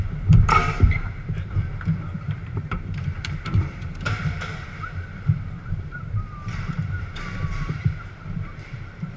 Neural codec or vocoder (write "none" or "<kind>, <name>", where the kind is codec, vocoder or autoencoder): vocoder, BigVGAN v2